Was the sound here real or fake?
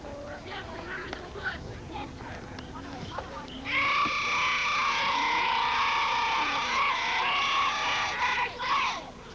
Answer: real